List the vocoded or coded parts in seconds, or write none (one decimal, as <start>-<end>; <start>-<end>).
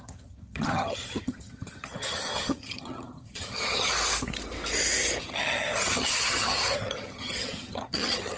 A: 0.0-3.9; 5.2-8.4